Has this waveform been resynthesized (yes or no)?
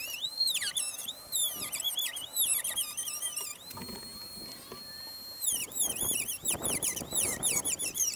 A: yes